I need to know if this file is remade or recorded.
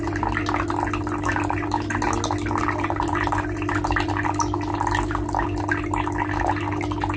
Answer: recorded